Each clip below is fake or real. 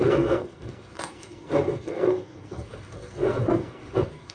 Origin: fake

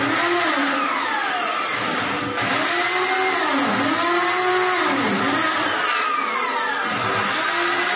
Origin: real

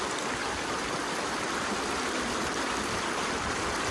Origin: real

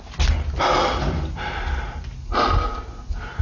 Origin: real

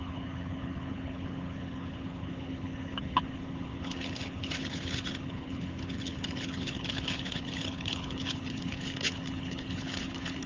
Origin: fake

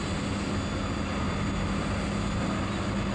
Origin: real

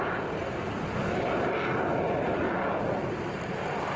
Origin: real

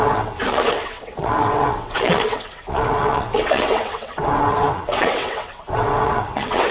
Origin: fake